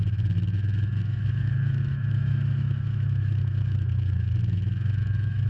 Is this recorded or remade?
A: remade